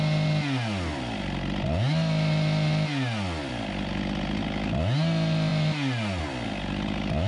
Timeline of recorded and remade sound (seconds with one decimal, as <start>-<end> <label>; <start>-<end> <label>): 0.0-7.3 recorded